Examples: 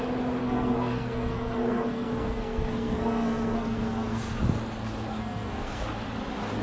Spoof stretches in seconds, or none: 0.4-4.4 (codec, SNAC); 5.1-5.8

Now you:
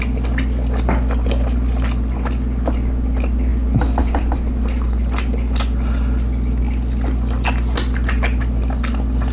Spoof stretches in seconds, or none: none

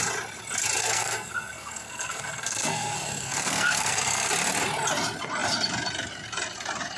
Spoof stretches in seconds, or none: 0.8-4.3 (codec, SNAC)